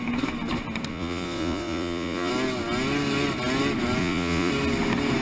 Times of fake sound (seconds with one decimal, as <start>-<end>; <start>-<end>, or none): 0.9-2.3; 4.0-4.5